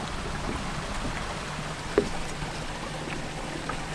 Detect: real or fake real